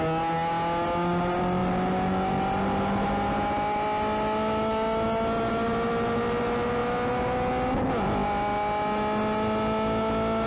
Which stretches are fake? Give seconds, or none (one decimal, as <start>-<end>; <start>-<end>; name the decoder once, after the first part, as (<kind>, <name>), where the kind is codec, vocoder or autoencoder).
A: none